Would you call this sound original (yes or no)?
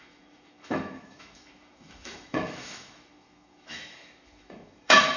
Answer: no